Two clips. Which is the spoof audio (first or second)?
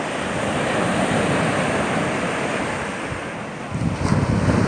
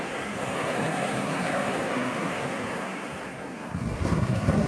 second